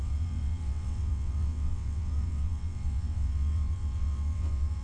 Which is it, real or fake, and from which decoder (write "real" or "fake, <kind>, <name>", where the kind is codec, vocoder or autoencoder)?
fake, vocoder, WaveNeXt